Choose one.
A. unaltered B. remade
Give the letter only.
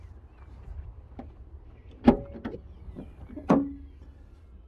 A